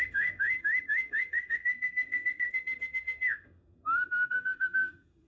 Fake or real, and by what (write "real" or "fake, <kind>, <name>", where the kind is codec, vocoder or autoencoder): fake, codec, SNAC